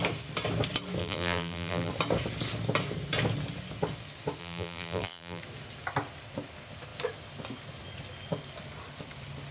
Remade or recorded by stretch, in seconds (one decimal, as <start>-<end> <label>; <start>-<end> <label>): 0.0-1.0 recorded; 1.0-1.9 remade; 1.9-4.4 recorded; 4.4-5.4 remade; 5.4-9.5 recorded